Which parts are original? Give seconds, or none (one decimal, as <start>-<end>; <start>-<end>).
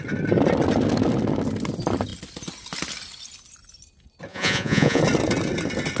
0.0-4.3; 5.0-6.0